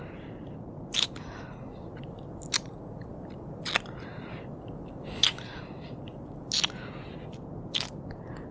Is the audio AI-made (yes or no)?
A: no